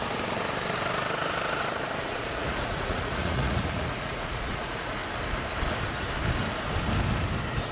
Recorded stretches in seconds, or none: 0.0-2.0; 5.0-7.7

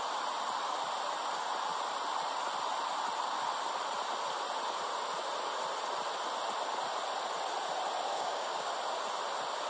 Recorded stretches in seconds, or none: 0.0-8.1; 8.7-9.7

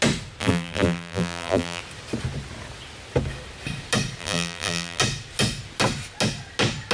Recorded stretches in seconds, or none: 0.0-0.4; 1.8-4.2; 5.0-6.9

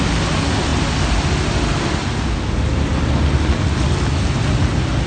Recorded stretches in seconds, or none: 0.0-5.1